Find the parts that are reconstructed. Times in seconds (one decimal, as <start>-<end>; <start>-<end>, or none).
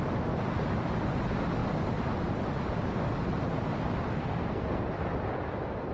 4.2-4.9